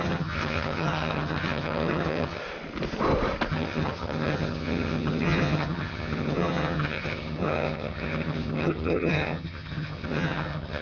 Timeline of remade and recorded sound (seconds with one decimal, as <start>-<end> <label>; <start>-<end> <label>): 0.0-2.4 remade; 2.4-3.5 recorded; 3.5-10.8 remade